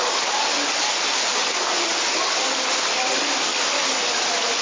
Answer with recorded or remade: recorded